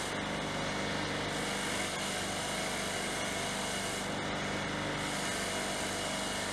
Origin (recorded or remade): recorded